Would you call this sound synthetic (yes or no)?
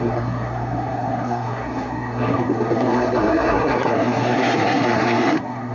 yes